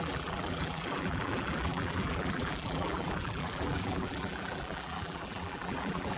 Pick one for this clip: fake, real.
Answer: fake